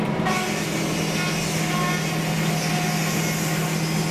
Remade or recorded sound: recorded